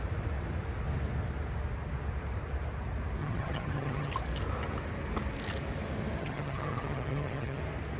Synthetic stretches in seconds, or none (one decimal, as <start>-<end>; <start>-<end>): 3.2-4.1; 6.2-7.6